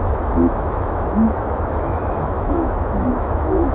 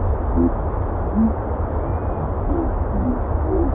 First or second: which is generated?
first